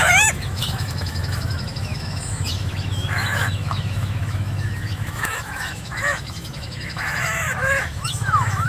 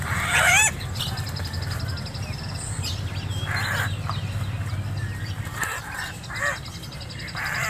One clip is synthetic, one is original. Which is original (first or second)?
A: second